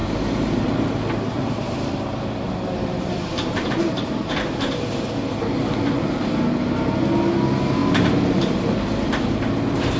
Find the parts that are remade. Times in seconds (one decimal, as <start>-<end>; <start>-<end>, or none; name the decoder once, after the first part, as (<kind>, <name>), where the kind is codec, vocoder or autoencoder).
0.0-4.3 (vocoder, BigVGAN v2)